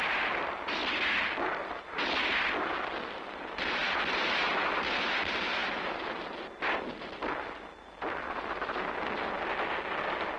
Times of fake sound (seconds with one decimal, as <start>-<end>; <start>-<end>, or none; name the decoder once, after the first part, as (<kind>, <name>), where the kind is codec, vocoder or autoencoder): 5.6-6.4 (vocoder, BigVGAN v2)